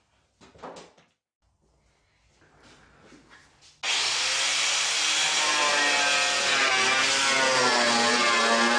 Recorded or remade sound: recorded